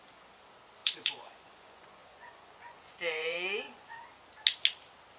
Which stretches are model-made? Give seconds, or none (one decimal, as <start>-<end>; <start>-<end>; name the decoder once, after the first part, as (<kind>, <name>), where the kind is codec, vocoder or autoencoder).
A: 0.8-3.9 (vocoder, Vocos)

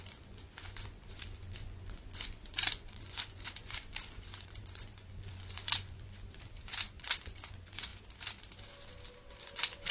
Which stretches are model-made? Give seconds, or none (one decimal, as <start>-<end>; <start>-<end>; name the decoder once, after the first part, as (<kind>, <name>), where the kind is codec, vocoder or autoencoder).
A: 0.0-7.9 (vocoder, Vocos); 9.4-9.9

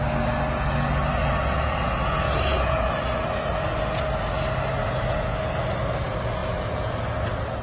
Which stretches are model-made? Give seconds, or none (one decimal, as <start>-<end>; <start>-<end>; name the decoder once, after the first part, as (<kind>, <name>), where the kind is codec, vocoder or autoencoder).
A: 1.2-2.9 (vocoder, Vocos); 4.8-5.3; 6.4-7.0

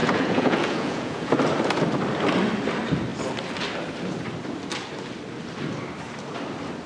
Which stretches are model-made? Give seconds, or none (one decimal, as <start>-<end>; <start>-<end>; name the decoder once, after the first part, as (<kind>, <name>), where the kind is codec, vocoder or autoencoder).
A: 0.0-1.3 (vocoder, Vocos)

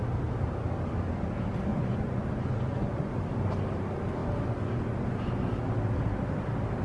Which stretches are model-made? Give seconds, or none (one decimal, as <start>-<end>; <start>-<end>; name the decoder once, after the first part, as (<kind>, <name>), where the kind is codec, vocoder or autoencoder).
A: 1.7-3.1 (vocoder, Vocos)

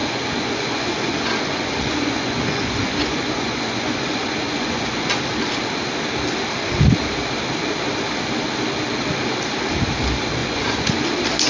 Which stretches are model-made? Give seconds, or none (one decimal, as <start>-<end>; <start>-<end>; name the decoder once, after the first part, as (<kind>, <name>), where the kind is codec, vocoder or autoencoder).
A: 0.0-5.1 (vocoder, Vocos); 10.4-11.1

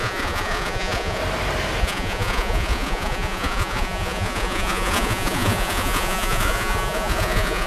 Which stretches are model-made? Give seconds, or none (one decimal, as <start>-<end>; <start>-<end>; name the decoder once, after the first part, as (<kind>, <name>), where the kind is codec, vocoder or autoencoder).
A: 0.0-1.2 (vocoder, Vocos); 1.8-7.7

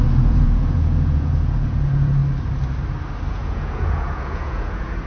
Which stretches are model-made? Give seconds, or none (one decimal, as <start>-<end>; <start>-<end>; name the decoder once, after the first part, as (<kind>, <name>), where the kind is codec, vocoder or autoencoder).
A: 0.0-2.2 (vocoder, Vocos); 3.3-5.1